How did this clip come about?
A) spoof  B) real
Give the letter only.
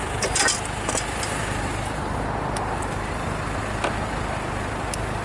B